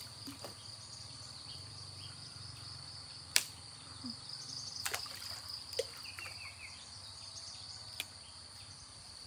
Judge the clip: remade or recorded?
remade